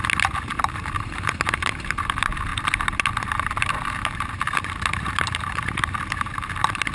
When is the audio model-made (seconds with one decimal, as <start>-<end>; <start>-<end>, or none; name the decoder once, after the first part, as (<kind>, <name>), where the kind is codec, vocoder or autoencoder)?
0.0-6.9 (vocoder, BigVGAN v2)